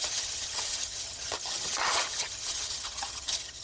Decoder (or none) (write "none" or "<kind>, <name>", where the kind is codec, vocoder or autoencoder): vocoder, HiFi-GAN